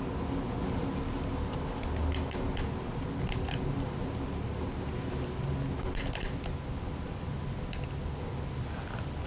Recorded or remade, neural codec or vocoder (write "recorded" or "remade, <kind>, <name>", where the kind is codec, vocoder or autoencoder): recorded